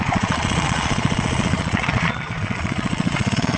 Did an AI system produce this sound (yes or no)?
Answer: yes